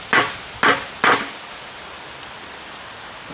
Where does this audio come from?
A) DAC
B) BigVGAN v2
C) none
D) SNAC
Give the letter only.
C